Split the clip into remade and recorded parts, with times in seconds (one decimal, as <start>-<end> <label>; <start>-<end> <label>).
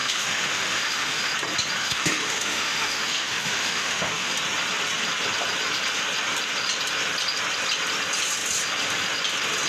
0.0-1.3 remade; 1.3-1.8 recorded; 1.8-4.3 remade; 4.3-9.7 recorded